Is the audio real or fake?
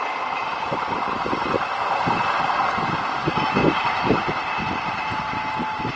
real